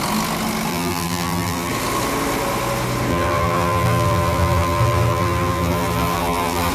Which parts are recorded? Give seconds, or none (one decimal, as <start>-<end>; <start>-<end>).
0.0-0.7; 1.7-3.1